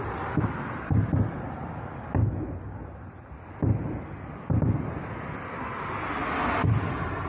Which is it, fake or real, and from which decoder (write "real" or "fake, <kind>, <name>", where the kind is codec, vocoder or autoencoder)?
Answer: real